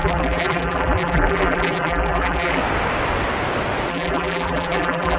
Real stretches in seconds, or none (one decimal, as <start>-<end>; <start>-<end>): 2.6-3.9